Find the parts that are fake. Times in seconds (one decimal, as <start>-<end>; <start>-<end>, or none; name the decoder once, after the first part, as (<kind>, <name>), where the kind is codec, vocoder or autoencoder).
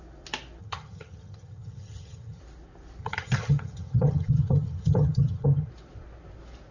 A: 0.6-2.4 (vocoder, HiFi-GAN); 3.0-5.7